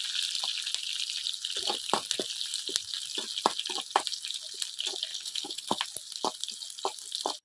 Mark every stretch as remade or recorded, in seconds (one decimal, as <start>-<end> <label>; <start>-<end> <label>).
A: 0.0-5.1 recorded; 5.1-5.8 remade; 5.8-7.4 recorded